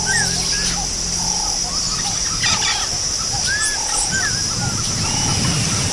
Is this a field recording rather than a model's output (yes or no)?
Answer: yes